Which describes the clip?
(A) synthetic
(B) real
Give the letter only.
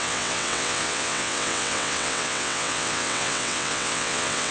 A